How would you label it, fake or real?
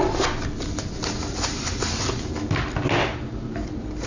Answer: real